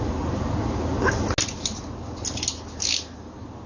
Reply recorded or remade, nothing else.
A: recorded